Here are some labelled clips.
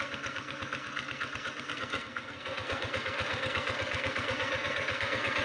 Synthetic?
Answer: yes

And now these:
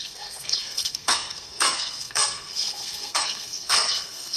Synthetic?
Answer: yes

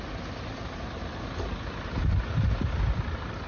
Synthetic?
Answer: no